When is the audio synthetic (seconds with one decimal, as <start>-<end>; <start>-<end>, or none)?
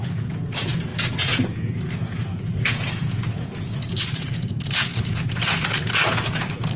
0.0-6.8